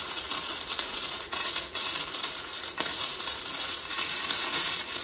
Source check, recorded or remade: remade